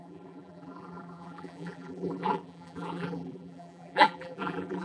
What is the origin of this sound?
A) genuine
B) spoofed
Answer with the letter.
B